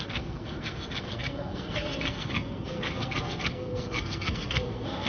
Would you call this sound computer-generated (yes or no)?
yes